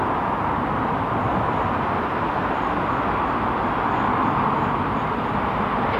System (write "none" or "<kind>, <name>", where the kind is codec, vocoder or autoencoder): none